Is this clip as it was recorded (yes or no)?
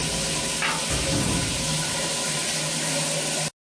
yes